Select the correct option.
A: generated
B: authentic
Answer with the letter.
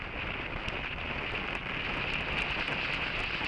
B